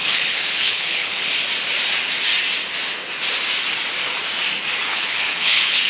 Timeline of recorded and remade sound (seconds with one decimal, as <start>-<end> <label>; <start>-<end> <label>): 0.0-1.3 remade; 1.3-4.8 recorded; 4.8-5.9 remade